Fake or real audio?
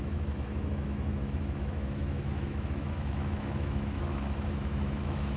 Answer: fake